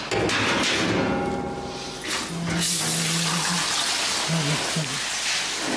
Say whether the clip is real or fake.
real